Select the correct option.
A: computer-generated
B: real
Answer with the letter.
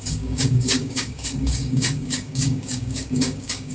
A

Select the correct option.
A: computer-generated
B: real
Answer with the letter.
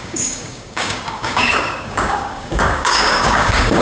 A